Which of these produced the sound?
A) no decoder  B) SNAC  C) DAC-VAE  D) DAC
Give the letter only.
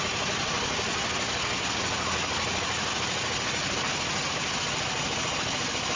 A